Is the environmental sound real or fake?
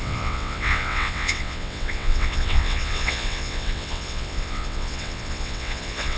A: fake